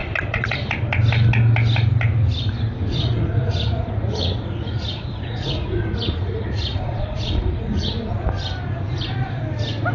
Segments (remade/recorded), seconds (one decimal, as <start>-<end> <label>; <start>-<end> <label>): 0.0-2.8 recorded; 2.8-8.1 remade; 8.1-9.9 recorded